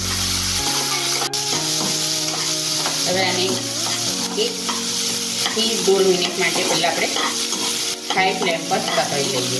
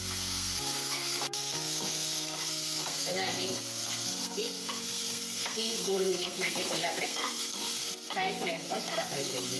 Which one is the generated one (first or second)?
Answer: second